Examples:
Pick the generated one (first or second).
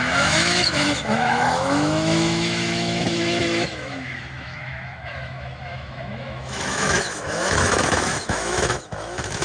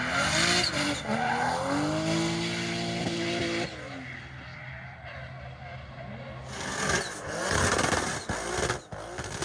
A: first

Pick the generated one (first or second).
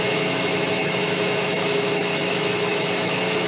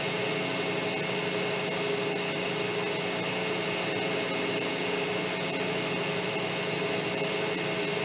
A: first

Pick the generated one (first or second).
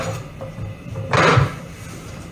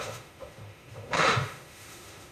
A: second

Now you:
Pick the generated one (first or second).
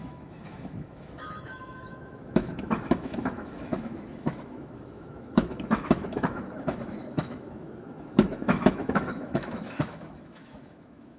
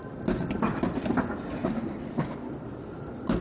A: first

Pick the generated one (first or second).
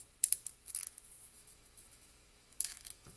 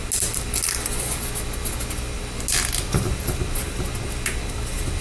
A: first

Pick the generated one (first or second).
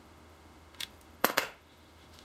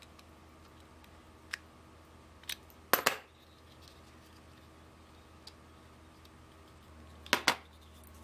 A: first